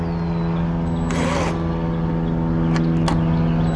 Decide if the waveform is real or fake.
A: real